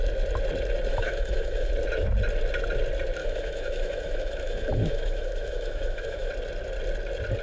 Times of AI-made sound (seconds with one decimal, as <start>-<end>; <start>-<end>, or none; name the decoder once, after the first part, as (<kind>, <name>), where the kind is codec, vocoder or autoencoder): 0.9-1.7 (autoencoder, DAC-VAE); 3.2-6.3